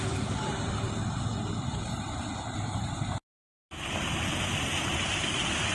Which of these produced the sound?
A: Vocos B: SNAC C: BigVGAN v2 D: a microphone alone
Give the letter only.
C